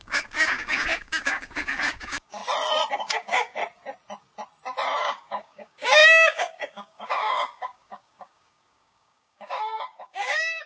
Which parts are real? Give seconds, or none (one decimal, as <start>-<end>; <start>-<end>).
2.4-2.9; 3.6-5.0